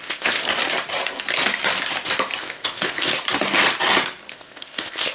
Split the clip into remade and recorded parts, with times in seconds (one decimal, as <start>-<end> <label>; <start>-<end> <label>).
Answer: 0.0-0.4 remade; 0.4-2.4 recorded; 2.4-3.1 remade; 3.1-4.3 recorded; 4.3-5.1 remade